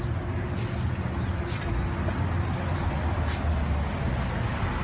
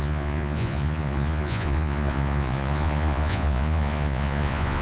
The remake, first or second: second